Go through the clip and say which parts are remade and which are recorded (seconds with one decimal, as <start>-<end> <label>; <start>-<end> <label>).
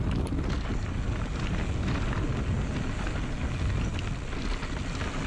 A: 0.0-5.3 recorded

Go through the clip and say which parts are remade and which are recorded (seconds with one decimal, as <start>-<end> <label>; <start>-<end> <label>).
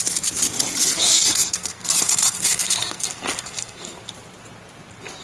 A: 0.0-0.9 recorded; 0.9-4.0 remade; 4.0-5.2 recorded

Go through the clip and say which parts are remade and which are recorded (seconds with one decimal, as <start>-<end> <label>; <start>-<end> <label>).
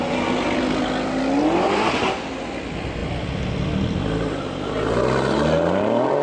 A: 0.0-6.2 recorded